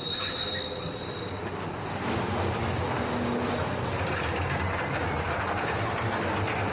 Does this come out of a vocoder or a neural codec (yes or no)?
no